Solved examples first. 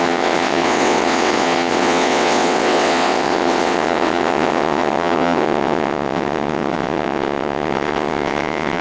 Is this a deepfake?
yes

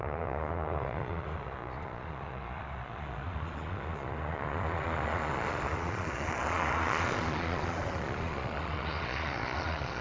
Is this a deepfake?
yes